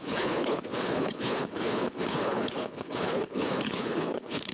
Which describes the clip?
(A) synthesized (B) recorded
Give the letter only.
A